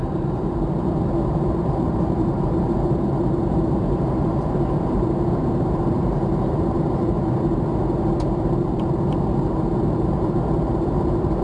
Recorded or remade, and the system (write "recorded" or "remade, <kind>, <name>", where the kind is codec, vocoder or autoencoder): remade, vocoder, BigVGAN v2